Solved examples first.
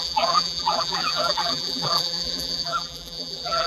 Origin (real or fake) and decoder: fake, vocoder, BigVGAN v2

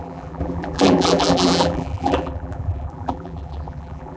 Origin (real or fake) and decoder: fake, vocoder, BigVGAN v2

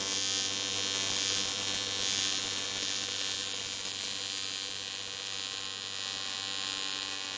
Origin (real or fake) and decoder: real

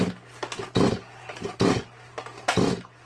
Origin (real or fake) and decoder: real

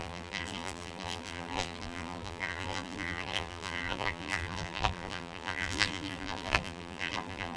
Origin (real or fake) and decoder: fake, vocoder, BigVGAN v2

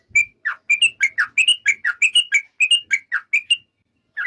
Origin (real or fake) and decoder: real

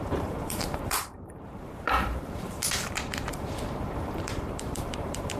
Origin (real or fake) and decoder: fake, vocoder, BigVGAN v2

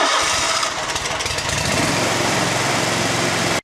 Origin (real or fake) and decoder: fake, vocoder, BigVGAN v2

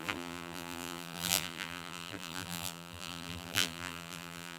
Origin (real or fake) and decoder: fake, vocoder, BigVGAN v2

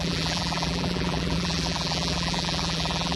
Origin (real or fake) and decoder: fake, vocoder, BigVGAN v2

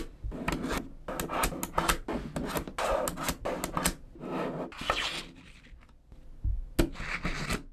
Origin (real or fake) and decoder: real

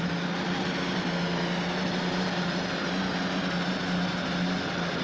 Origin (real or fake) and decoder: real